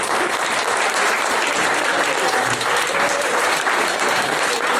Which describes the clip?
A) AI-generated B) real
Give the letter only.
A